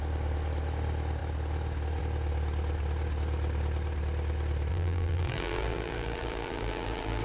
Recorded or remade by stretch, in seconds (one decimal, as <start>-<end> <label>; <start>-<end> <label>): 0.0-4.7 recorded; 4.7-7.2 remade